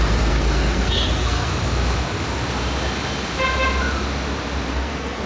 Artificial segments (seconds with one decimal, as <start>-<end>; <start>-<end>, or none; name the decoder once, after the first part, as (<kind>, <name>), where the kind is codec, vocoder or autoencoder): 0.0-1.5 (codec, SNAC); 4.7-5.3

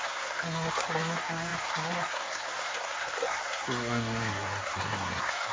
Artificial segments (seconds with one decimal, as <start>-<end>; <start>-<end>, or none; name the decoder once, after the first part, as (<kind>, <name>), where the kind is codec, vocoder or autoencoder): 0.0-5.5 (codec, SNAC)